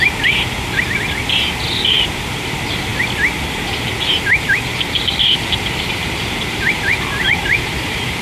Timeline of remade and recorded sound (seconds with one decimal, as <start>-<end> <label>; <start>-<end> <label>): 0.0-4.7 recorded; 4.7-8.2 remade